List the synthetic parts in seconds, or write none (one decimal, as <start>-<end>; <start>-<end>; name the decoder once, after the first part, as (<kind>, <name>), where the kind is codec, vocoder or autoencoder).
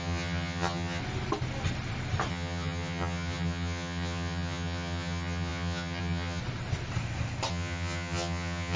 0.0-1.0 (vocoder, HiFi-GAN); 2.3-6.4; 7.5-8.8